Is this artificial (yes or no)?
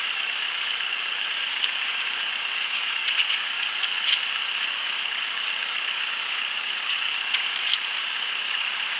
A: yes